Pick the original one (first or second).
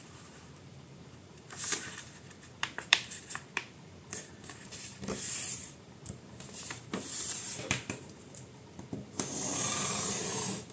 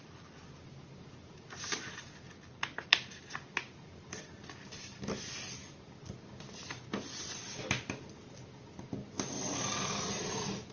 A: second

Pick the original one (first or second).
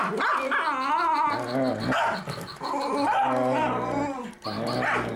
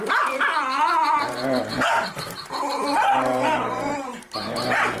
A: first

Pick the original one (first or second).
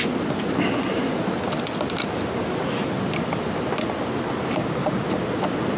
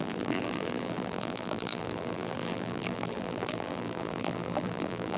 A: first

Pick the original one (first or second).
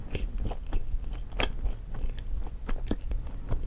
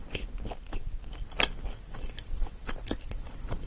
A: first